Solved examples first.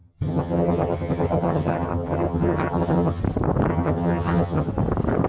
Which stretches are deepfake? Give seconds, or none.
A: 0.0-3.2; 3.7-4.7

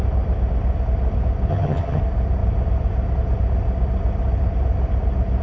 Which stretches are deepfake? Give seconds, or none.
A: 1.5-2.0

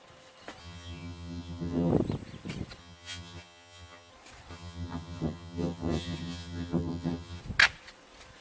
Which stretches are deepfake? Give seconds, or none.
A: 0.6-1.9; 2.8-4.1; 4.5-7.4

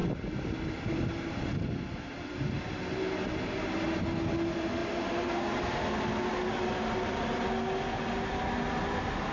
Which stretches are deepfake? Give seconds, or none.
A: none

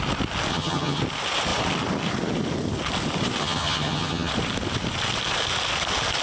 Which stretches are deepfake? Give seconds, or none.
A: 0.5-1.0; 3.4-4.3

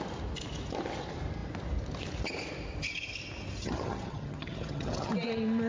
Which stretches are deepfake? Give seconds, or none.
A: 3.6-5.1

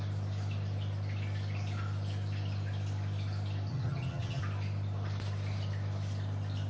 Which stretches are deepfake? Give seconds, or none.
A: 3.7-4.4